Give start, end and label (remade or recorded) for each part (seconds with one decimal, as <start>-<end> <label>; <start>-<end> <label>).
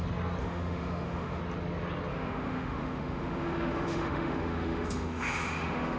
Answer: 0.0-0.4 recorded; 0.4-1.4 remade; 1.4-2.1 recorded; 2.1-6.0 remade